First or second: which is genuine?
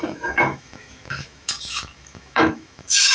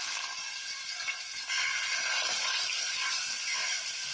second